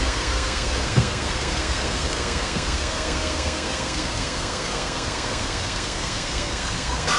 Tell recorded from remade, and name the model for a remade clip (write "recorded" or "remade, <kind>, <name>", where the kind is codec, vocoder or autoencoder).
remade, codec, SNAC